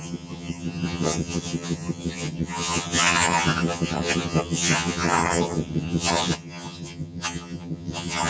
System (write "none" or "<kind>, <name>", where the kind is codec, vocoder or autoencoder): vocoder, HiFi-GAN